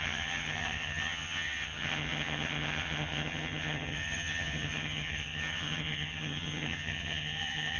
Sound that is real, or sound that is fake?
fake